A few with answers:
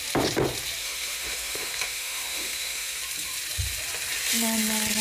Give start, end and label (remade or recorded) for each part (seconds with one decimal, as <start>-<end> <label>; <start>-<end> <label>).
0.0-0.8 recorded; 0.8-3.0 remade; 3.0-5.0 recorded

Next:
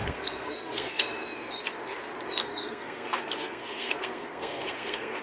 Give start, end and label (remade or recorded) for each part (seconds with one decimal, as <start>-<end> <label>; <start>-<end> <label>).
0.0-1.0 remade; 1.0-2.4 recorded; 2.4-5.2 remade

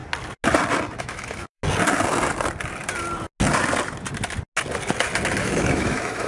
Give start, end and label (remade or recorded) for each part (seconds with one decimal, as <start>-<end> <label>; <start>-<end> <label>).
0.0-1.0 recorded; 1.0-1.6 remade; 1.6-5.4 recorded; 5.4-6.3 remade

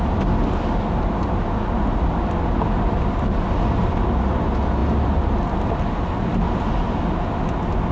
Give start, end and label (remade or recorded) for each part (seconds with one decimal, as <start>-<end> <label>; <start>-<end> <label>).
0.0-7.9 recorded